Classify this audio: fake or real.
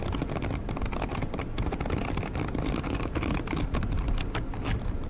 real